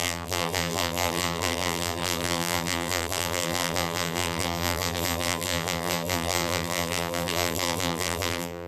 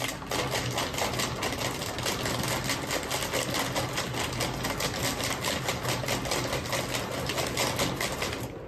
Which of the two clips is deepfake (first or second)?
first